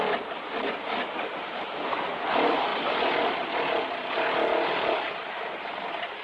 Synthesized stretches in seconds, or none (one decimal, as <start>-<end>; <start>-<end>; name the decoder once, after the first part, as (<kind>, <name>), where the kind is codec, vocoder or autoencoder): none